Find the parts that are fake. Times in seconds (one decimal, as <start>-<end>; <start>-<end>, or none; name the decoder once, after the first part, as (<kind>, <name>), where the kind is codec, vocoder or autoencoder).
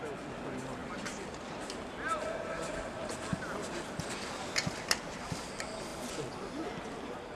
none